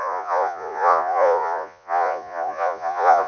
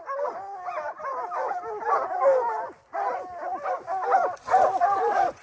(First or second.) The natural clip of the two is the second